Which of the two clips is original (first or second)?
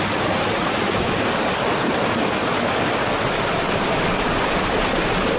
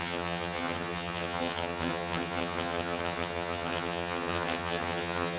first